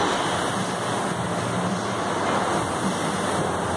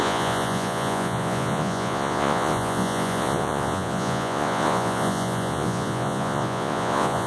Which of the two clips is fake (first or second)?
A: second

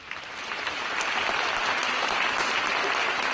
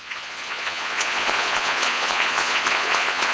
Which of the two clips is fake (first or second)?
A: second